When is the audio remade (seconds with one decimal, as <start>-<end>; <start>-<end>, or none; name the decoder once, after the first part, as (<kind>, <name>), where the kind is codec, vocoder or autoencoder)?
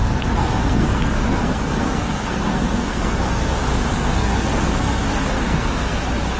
0.0-3.5 (codec, SNAC); 3.9-6.0